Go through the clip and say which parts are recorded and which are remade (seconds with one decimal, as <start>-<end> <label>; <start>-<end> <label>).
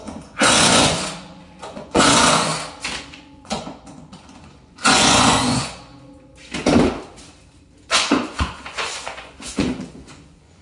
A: 0.0-2.5 remade; 2.5-3.0 recorded; 3.0-5.9 remade; 5.9-7.8 recorded; 7.8-10.6 remade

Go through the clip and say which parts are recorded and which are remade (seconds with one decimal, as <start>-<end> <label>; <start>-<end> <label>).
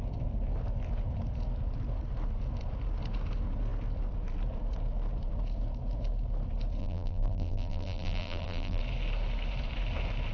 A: 0.0-6.8 recorded; 6.8-8.8 remade; 8.8-10.3 recorded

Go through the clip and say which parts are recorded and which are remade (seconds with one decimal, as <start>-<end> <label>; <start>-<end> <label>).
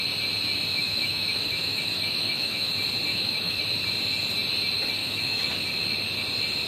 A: 0.0-0.7 recorded; 0.7-2.7 remade; 2.7-3.1 recorded; 3.1-3.6 remade; 3.6-5.0 recorded; 5.0-5.5 remade; 5.5-6.7 recorded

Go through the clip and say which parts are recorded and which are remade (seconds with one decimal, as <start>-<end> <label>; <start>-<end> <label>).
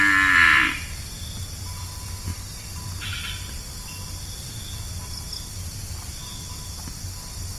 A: 0.0-2.3 recorded; 2.3-2.8 remade; 2.8-7.6 recorded